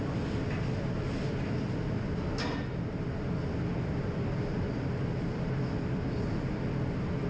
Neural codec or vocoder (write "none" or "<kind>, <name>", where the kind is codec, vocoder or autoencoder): none